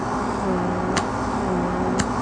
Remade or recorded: recorded